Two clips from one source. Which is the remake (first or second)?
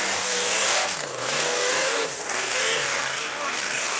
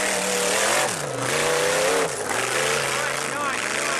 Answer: first